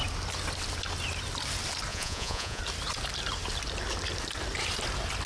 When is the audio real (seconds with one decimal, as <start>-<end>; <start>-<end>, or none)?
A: 0.0-1.9; 2.6-5.3